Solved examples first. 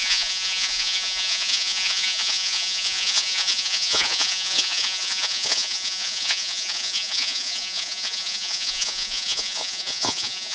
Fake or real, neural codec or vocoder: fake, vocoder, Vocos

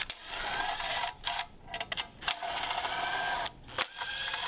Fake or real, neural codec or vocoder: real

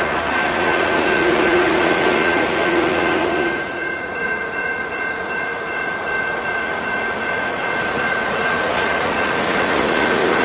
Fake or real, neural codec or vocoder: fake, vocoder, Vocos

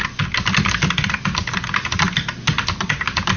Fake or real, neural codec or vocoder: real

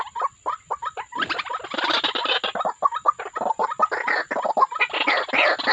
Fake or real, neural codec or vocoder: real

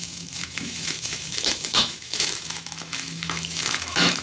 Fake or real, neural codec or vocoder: fake, autoencoder, DAC-VAE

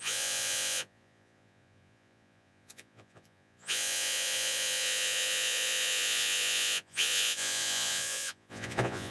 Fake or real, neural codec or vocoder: fake, vocoder, Vocos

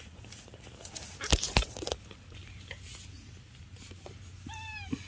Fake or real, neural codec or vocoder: real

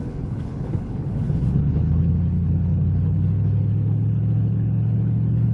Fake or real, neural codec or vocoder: fake, codec, HILCodec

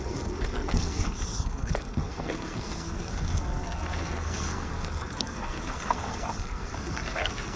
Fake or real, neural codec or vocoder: fake, codec, SNAC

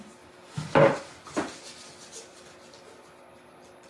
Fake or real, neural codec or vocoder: real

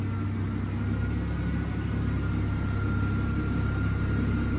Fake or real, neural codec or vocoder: real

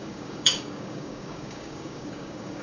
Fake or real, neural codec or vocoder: fake, codec, DAC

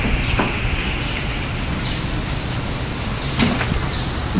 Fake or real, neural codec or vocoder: real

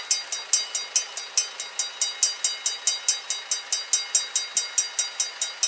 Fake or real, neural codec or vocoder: real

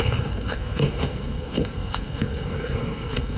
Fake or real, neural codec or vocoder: fake, codec, SNAC